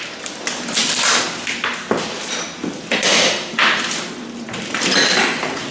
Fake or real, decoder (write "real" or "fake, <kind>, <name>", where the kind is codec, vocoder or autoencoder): fake, vocoder, BigVGAN v2